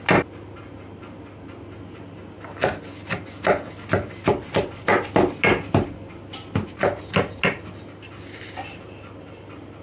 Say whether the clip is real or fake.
real